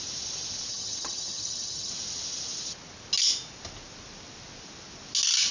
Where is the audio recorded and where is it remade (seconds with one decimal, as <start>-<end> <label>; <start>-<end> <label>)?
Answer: 0.0-0.7 recorded; 0.7-1.9 remade; 1.9-5.5 recorded